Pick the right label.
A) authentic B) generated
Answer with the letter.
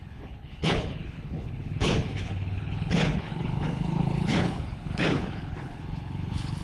B